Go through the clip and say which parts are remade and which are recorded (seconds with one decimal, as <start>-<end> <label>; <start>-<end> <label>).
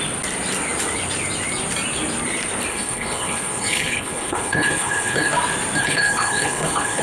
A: 0.0-2.7 recorded; 2.7-5.3 remade; 5.3-5.8 recorded; 5.8-7.0 remade